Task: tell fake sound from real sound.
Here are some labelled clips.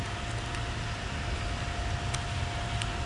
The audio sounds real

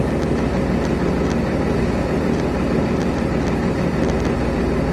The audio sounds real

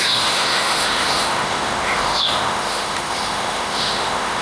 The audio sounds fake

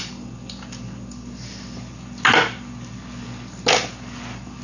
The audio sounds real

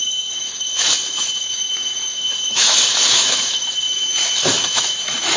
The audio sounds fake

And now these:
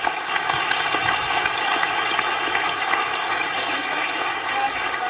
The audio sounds fake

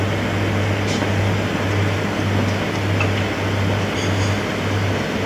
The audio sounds real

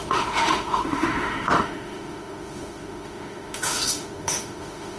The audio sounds fake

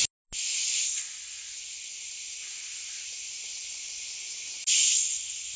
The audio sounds real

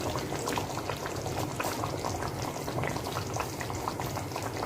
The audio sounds real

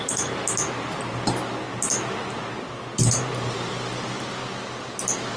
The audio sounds real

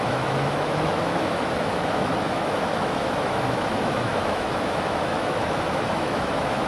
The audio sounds fake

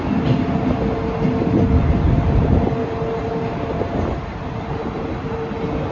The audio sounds real